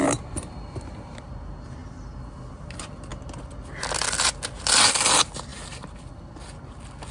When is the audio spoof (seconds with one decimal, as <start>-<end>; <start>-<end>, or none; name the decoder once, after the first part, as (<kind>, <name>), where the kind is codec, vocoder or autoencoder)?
0.0-1.3 (vocoder, BigVGAN v2)